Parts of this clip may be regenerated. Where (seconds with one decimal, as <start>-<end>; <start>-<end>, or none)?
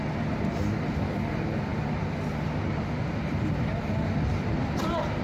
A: none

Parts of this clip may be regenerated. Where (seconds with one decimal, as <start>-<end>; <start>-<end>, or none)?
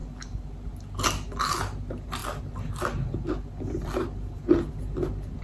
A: none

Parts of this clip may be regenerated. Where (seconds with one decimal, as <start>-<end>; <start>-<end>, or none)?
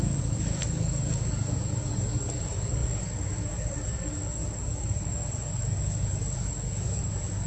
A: 0.0-7.5